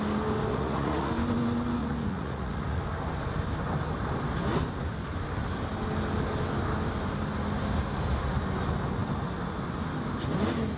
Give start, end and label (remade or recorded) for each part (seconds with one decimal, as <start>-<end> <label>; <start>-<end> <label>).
0.0-0.5 recorded; 0.5-1.1 remade; 1.1-1.8 recorded; 1.8-2.8 remade; 2.8-10.8 recorded